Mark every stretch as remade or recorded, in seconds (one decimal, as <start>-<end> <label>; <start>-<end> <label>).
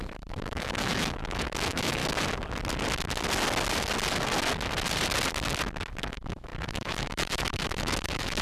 0.0-2.0 remade; 2.0-6.0 recorded; 6.0-8.4 remade